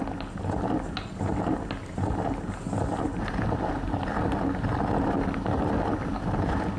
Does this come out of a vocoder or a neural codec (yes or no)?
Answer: no